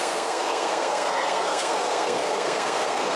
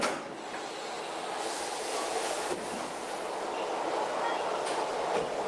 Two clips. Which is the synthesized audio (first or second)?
first